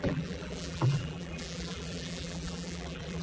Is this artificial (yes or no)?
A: yes